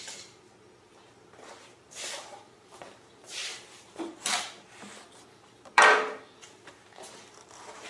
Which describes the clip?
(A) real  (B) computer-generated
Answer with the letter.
B